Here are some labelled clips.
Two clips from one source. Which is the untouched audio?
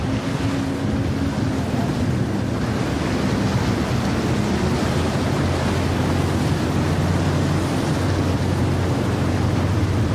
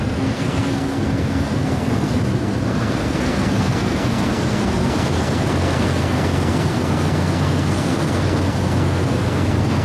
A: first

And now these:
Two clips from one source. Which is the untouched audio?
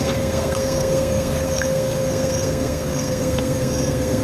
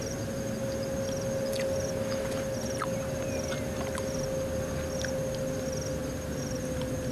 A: second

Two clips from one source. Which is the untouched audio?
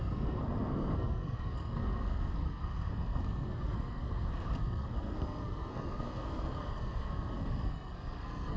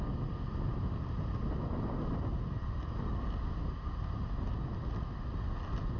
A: second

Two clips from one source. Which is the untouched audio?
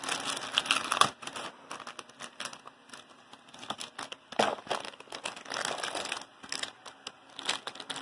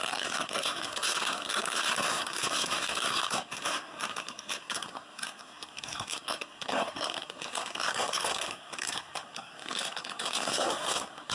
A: first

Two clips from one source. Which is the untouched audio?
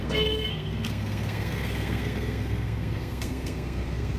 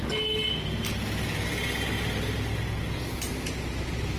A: second